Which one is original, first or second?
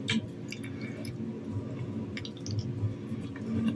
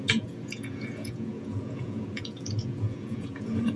first